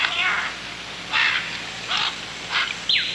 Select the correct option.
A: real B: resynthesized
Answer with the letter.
A